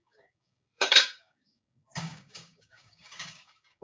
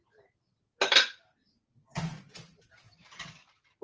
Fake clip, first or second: first